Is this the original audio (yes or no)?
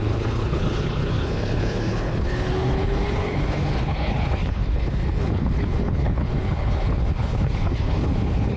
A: no